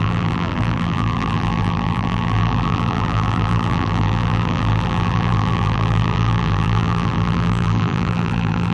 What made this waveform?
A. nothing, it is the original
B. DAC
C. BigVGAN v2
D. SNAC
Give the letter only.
C